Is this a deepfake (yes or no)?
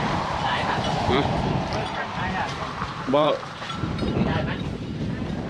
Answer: yes